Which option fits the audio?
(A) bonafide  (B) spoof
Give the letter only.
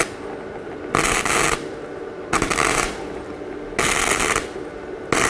A